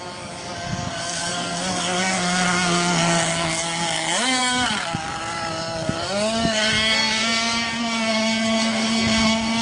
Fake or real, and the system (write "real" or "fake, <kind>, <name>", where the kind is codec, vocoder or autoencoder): fake, codec, DAC